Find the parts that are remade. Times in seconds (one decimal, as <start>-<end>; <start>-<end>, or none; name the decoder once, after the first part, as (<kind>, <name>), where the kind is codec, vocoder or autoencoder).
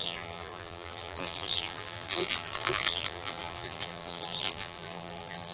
0.0-5.5 (vocoder, BigVGAN v2)